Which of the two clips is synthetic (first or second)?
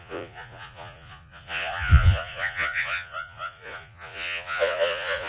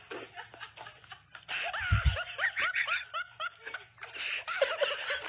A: first